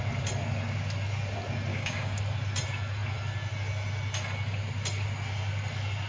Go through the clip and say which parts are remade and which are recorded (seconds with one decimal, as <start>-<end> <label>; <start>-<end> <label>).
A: 0.0-1.7 recorded; 1.7-2.2 remade; 2.2-6.1 recorded